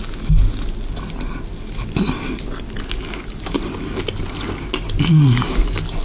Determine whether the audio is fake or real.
real